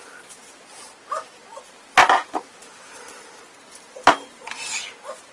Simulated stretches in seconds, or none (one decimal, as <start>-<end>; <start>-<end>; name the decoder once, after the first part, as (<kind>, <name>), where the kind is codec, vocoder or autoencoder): none